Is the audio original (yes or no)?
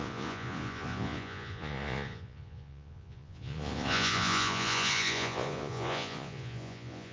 no